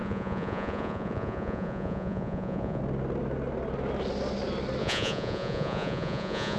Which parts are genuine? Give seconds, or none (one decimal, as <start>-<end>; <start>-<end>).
2.8-4.8